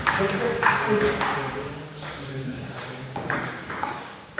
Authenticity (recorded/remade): remade